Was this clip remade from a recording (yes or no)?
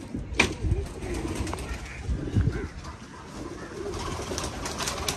no